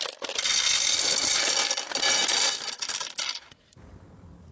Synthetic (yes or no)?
no